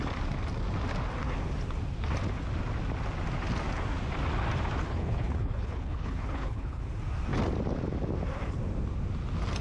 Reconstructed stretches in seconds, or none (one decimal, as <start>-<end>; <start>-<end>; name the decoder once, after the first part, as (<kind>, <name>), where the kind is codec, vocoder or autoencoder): 4.8-6.8 (codec, HILCodec)